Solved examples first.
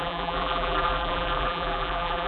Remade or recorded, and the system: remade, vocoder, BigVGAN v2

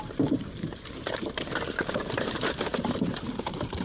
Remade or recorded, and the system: remade, vocoder, BigVGAN v2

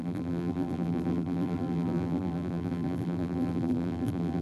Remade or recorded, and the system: remade, vocoder, BigVGAN v2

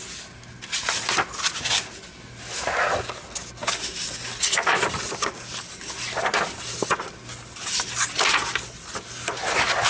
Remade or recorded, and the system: recorded